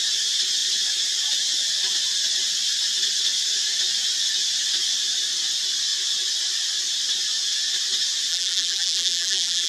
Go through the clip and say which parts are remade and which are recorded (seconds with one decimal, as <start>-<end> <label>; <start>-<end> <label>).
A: 0.0-8.3 recorded; 8.3-9.7 remade

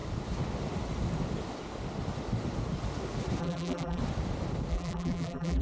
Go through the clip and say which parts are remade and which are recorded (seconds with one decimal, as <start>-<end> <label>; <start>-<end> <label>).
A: 0.0-3.4 recorded; 3.4-4.0 remade; 4.0-4.7 recorded; 4.7-5.6 remade

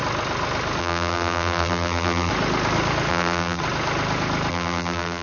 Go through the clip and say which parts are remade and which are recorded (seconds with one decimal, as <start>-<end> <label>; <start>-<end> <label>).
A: 0.0-0.8 recorded; 0.8-2.3 remade; 2.3-3.1 recorded; 3.1-3.6 remade; 3.6-4.5 recorded; 4.5-5.2 remade

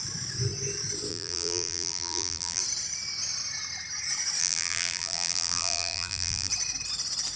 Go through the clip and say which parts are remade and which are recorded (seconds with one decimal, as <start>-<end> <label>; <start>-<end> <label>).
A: 0.0-1.1 recorded; 1.1-2.6 remade; 2.6-4.4 recorded; 4.4-6.5 remade; 6.5-7.4 recorded